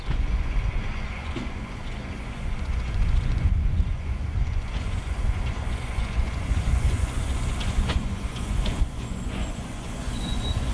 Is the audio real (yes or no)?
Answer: no